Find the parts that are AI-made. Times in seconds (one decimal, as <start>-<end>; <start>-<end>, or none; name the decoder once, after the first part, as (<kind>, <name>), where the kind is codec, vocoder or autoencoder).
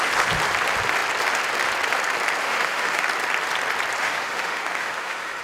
2.4-3.0 (autoencoder, DAC-VAE); 4.0-5.4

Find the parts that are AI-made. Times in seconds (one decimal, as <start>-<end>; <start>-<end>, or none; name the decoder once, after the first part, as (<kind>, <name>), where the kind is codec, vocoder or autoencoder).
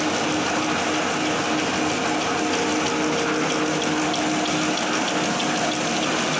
none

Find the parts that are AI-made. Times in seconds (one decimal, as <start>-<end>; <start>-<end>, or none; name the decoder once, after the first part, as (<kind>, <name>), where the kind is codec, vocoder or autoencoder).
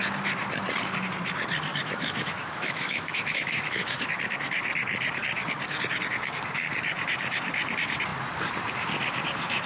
1.7-4.1 (autoencoder, DAC-VAE)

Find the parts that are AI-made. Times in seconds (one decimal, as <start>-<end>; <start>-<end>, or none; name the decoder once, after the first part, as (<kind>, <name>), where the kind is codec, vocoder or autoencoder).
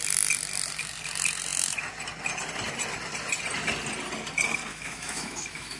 4.7-5.8 (autoencoder, DAC-VAE)